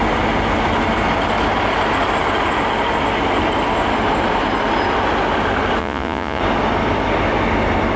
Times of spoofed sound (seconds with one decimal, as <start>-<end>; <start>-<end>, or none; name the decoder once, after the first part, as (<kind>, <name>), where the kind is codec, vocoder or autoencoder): 5.8-6.4 (vocoder, Vocos)